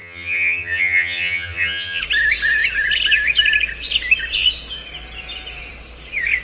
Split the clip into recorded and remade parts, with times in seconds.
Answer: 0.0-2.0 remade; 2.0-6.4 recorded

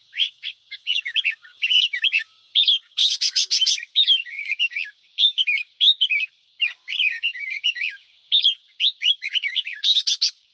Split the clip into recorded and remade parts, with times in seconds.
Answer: 0.0-10.5 remade

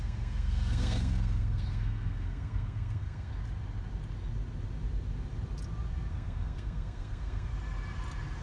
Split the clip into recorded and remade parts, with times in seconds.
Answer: 0.0-3.3 remade; 3.3-6.1 recorded; 6.1-7.5 remade; 7.5-8.4 recorded

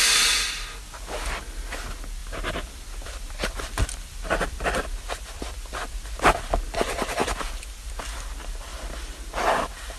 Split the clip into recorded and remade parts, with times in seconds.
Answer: 0.0-2.2 recorded; 2.2-6.4 remade; 6.4-7.2 recorded; 7.2-7.9 remade; 7.9-8.7 recorded; 8.7-9.3 remade; 9.3-10.0 recorded